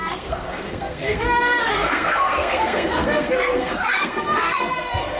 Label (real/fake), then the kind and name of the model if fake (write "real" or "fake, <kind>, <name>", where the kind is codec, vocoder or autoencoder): fake, codec, SNAC